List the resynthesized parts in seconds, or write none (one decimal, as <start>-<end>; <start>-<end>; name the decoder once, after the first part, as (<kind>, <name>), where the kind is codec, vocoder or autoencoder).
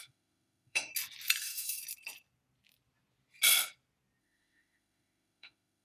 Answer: 0.0-0.9 (autoencoder, DAC-VAE); 1.4-1.8; 4.2-5.8